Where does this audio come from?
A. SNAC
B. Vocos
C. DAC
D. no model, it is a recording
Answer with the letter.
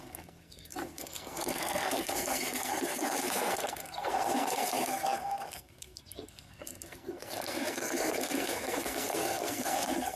A